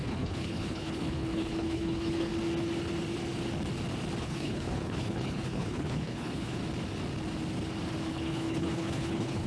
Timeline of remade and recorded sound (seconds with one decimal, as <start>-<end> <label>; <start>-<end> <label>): 0.0-2.3 remade; 2.3-4.2 recorded; 4.2-6.6 remade; 6.6-8.1 recorded; 8.1-9.5 remade